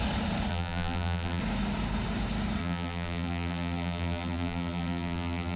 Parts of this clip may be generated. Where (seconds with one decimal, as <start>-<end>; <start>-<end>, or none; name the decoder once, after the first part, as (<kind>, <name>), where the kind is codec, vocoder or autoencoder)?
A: 0.5-1.4 (vocoder, BigVGAN v2); 2.6-5.6